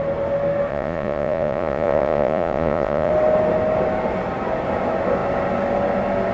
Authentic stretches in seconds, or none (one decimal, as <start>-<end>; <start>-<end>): 0.0-0.7; 3.1-6.3